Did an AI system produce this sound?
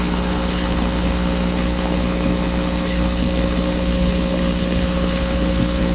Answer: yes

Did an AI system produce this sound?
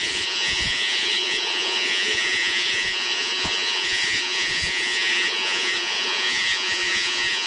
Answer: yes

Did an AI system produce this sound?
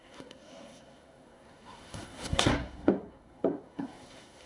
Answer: yes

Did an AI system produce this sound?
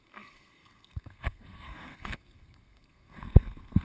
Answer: yes